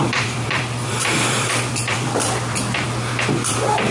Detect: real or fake fake